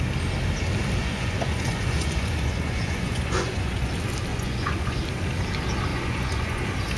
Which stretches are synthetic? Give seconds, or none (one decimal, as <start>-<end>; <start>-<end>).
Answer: 1.0-3.9; 4.3-5.0; 5.9-6.6